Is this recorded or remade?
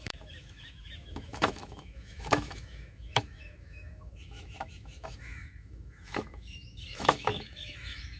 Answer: remade